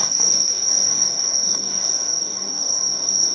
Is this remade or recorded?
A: remade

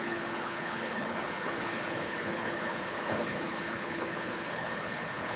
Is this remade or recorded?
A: remade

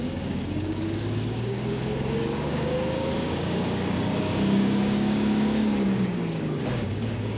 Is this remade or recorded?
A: remade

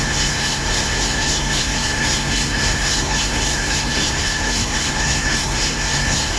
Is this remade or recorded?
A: remade